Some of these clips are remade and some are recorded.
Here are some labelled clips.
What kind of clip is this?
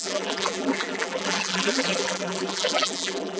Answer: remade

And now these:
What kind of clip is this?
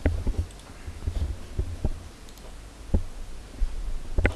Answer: recorded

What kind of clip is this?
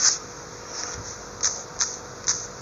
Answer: remade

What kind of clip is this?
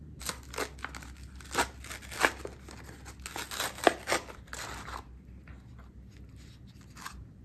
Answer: recorded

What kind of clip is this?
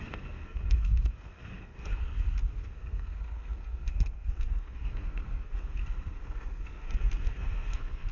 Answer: remade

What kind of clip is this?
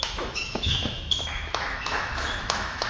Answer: remade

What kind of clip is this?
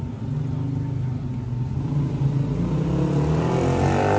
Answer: recorded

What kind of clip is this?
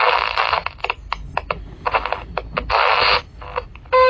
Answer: recorded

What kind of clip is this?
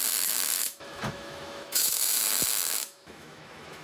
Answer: remade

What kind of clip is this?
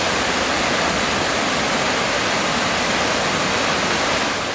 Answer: recorded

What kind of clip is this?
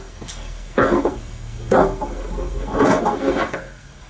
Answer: remade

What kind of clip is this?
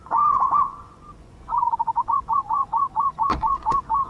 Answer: remade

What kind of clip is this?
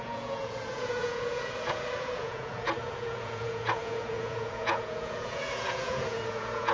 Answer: remade